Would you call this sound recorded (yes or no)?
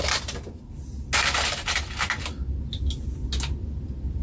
yes